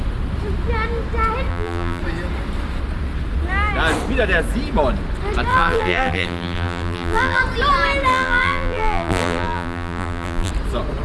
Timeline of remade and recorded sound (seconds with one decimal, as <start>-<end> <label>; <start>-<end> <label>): 0.0-1.5 recorded; 1.5-2.0 remade; 2.0-5.5 recorded; 5.5-7.4 remade; 7.4-8.1 recorded; 8.1-10.5 remade; 10.5-11.0 recorded